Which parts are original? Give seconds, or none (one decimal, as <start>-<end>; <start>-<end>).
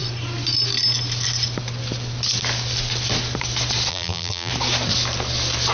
0.0-3.9; 4.5-5.7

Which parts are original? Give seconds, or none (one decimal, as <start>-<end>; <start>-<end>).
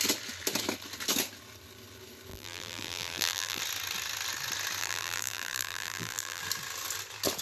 0.0-2.3; 3.6-4.8; 6.4-7.4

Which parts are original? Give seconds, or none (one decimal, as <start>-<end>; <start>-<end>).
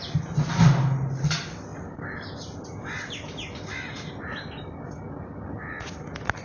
0.0-1.7; 4.9-6.4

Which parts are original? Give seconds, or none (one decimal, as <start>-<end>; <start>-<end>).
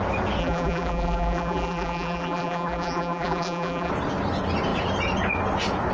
0.0-0.4; 3.9-5.9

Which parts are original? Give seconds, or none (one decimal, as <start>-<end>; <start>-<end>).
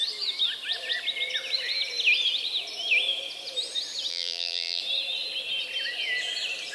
0.0-4.1; 4.8-6.7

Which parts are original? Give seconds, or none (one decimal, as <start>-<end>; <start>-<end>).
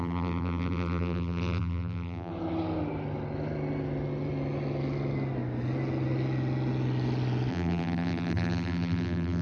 2.3-7.5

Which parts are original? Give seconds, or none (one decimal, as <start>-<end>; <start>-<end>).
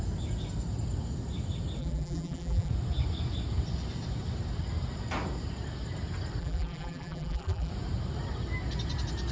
0.0-1.8; 2.7-6.4; 7.7-9.3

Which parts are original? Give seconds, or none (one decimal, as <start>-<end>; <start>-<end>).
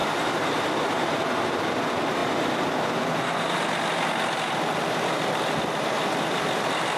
0.9-7.0